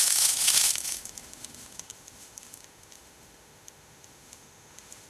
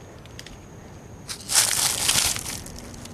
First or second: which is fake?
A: first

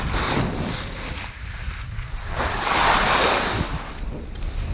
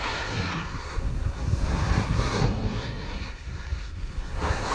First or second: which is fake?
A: second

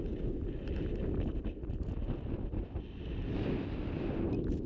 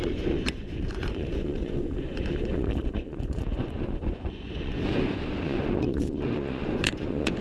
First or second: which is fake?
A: second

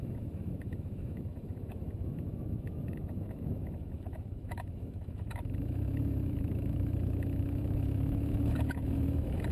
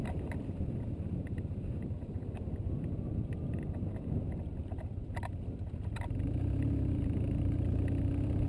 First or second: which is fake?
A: first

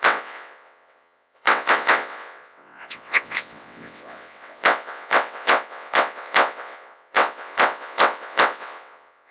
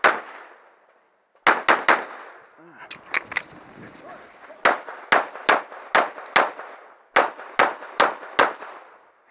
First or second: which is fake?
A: first